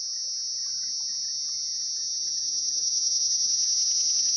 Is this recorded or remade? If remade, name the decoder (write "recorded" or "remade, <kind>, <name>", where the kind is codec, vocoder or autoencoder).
recorded